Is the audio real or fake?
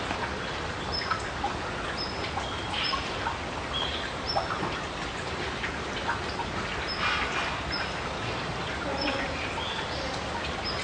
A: real